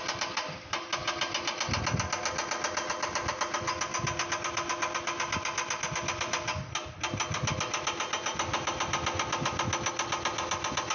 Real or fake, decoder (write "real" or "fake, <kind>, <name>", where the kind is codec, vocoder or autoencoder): real